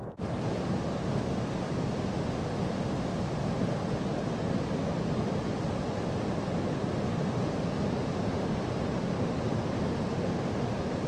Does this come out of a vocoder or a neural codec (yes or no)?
no